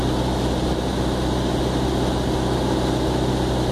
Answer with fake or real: real